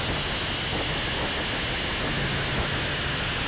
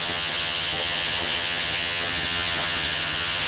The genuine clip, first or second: first